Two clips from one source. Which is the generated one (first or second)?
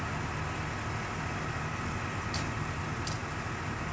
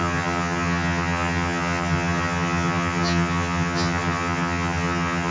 second